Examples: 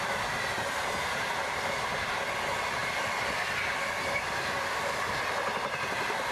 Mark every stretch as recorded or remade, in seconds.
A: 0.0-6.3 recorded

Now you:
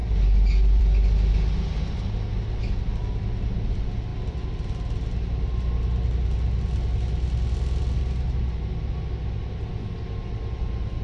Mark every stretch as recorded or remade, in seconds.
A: 0.0-11.0 recorded

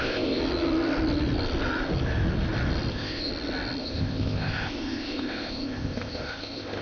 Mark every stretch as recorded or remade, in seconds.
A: 0.0-0.4 remade; 0.4-2.9 recorded; 2.9-3.3 remade; 3.3-3.8 recorded; 3.8-6.8 remade